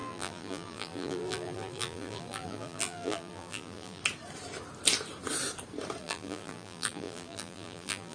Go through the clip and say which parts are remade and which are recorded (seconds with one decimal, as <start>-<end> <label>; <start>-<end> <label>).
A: 0.0-4.0 remade; 4.0-6.0 recorded; 6.0-8.1 remade